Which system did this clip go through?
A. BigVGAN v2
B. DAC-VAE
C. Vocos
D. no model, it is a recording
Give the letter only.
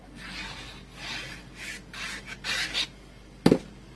D